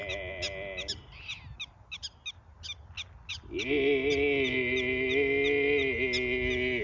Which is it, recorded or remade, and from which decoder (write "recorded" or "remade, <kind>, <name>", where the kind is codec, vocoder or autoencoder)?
recorded